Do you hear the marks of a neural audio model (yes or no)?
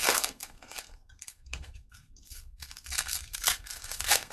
yes